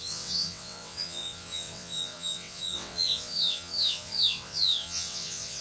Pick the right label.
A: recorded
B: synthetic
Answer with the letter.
B